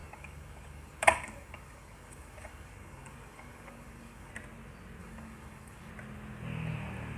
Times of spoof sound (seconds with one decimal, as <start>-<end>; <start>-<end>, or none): 0.0-4.3; 5.0-5.9